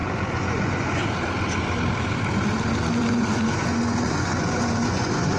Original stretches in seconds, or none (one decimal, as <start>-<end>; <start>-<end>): 1.0-3.0